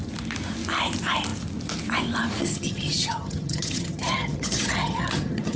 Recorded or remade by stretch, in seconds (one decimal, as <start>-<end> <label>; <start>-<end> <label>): 0.0-2.4 recorded; 2.4-5.6 remade